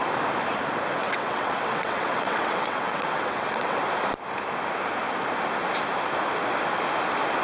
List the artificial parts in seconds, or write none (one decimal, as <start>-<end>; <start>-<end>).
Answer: 1.0-3.8